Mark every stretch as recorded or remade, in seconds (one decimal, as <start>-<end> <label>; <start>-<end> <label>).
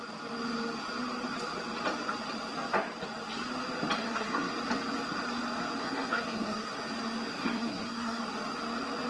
0.0-4.0 recorded; 4.0-4.5 remade; 4.5-5.8 recorded; 5.8-6.8 remade; 6.8-7.3 recorded; 7.3-8.2 remade; 8.2-9.1 recorded